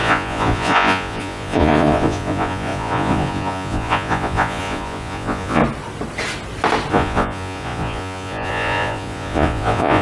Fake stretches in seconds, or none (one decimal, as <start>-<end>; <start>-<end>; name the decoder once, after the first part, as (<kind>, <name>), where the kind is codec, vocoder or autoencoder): 0.0-5.6 (vocoder, Vocos); 6.9-10.0